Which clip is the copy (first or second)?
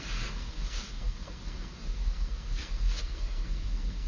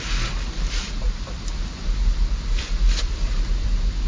first